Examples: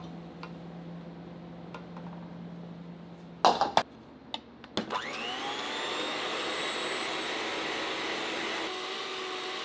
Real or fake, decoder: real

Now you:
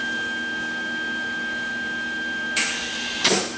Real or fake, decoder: real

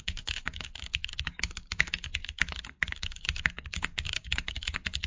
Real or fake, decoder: fake, codec, DAC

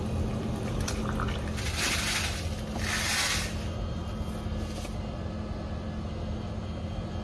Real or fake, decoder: real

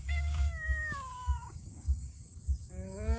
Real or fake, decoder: fake, codec, DAC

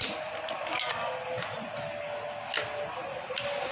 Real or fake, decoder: real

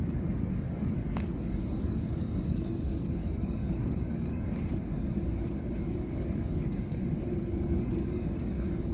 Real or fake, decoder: fake, codec, DAC